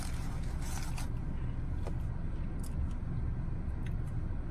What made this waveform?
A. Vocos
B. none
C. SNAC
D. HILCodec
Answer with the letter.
B